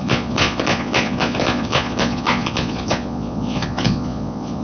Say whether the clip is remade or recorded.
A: remade